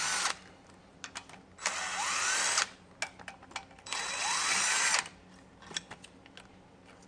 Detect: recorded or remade recorded